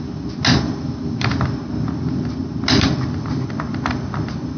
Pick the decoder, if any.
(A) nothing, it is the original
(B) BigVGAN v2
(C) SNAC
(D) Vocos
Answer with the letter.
A